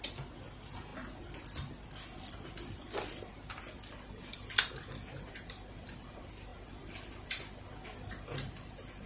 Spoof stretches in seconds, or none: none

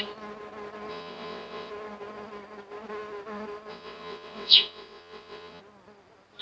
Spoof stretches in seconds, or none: 0.9-1.7 (vocoder, WaveNeXt); 3.7-5.6

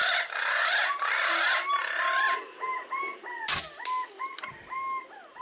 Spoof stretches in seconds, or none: none

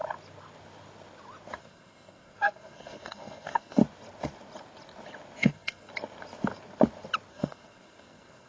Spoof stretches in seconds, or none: 1.6-3.8 (codec, SNAC); 5.4-5.9; 7.3-8.5

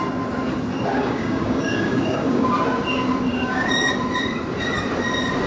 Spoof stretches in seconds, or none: 0.9-2.5 (codec, DAC); 3.3-3.9

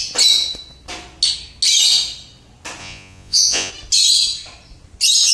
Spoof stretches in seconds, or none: 2.8-3.7 (vocoder, Vocos)